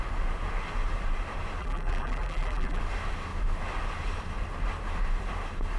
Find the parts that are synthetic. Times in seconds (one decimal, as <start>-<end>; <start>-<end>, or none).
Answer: 1.6-2.8